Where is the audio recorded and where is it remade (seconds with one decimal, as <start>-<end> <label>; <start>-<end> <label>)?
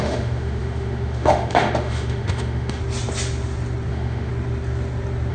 0.0-2.8 remade; 2.8-3.9 recorded; 3.9-4.3 remade; 4.3-5.3 recorded